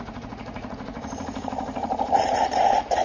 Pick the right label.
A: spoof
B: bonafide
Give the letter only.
A